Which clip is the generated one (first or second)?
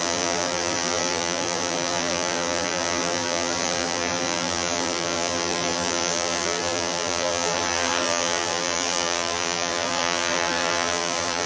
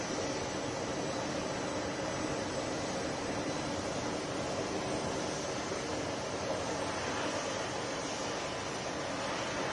first